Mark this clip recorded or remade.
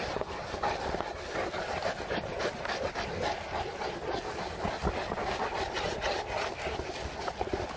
recorded